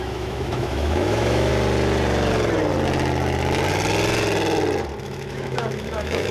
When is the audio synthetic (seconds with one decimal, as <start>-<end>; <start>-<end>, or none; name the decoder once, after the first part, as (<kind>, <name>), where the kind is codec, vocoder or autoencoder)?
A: 0.0-1.5 (autoencoder, DAC-VAE); 5.0-6.3